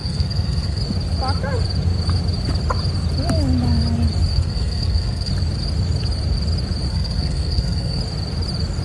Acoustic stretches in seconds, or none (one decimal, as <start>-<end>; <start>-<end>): 0.8-4.3; 5.3-6.9; 8.0-8.8